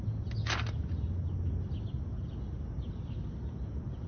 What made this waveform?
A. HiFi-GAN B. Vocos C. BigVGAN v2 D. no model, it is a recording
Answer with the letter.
D